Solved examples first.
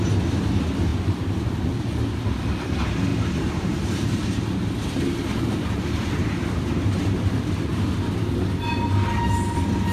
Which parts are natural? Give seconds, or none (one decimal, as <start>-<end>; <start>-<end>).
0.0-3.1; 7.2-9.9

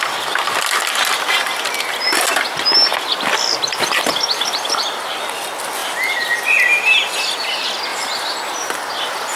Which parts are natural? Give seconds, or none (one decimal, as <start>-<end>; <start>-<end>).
0.0-2.8; 5.3-7.9; 8.7-9.4

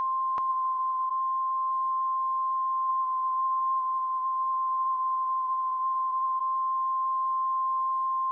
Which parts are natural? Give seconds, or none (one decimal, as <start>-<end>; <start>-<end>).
0.0-0.5; 1.1-2.9; 6.4-8.3

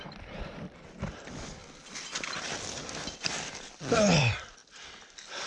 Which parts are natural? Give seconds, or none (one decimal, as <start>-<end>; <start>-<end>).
1.6-2.4; 4.6-5.5